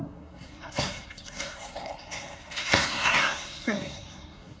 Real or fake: fake